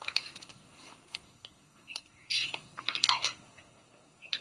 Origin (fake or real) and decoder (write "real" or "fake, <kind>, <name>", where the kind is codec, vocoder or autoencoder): fake, codec, SNAC